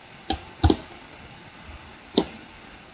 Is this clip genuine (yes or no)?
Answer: yes